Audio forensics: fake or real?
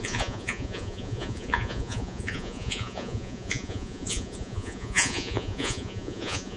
fake